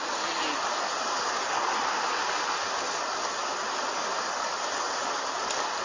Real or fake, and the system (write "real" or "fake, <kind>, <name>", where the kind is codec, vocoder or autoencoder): real